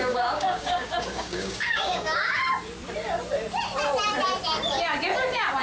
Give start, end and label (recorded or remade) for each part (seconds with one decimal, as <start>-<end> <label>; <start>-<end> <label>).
0.0-2.4 remade; 2.4-5.6 recorded